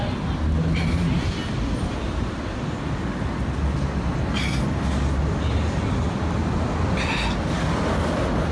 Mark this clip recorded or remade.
recorded